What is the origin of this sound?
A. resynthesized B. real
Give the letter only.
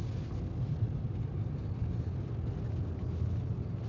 B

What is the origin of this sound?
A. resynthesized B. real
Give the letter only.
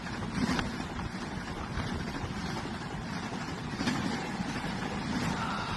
A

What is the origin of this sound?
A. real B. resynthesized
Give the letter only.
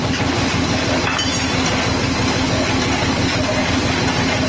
A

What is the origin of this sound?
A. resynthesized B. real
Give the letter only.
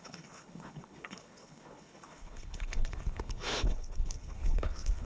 A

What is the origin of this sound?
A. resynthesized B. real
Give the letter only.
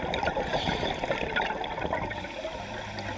B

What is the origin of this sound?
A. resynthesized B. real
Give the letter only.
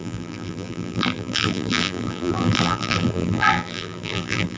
A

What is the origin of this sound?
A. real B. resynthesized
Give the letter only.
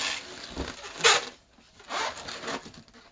A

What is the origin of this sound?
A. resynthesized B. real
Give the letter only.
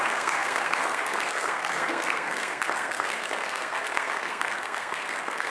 A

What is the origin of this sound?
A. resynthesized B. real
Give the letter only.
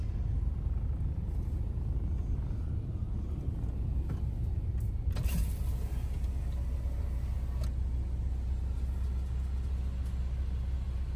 B